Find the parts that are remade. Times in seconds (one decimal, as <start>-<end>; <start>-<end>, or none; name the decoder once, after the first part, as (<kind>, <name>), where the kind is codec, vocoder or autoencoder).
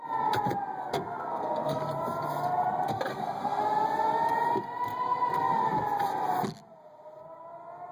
0.8-1.8 (codec, SNAC); 3.1-3.6